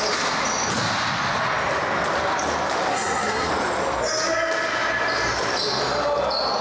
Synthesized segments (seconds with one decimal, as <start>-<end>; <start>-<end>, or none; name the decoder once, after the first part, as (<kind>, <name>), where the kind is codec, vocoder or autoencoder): 2.9-3.5 (codec, SNAC)